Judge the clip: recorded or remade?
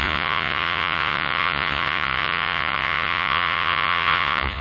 remade